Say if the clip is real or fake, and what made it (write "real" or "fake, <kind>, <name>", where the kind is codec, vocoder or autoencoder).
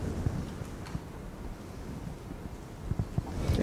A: real